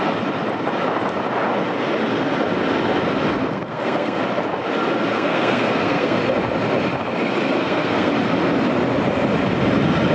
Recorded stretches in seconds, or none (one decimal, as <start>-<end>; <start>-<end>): 0.0-3.5; 4.2-5.1; 6.2-7.6; 8.1-10.1